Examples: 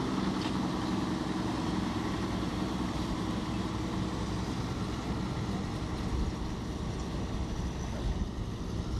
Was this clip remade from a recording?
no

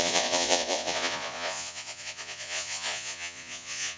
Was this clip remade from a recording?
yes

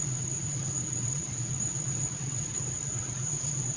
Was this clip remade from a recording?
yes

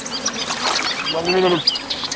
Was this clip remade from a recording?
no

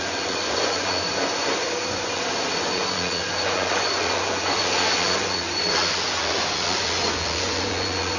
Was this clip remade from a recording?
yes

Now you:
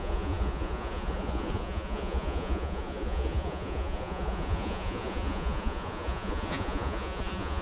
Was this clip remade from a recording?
yes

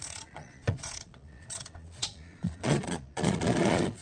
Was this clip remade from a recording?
yes